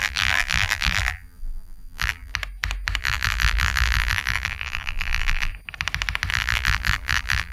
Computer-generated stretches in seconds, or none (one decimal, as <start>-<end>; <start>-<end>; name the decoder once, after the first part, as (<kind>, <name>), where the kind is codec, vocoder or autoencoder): 0.0-2.3 (vocoder, BigVGAN v2); 3.0-5.5; 6.3-7.5